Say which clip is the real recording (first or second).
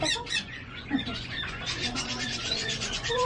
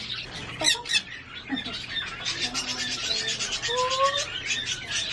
second